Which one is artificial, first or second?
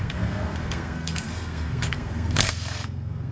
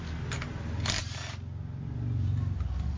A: first